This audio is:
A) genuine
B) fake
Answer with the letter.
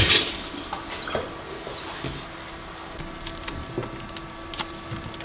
A